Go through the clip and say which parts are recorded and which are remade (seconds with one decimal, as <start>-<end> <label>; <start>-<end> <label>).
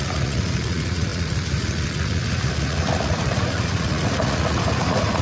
0.0-5.2 remade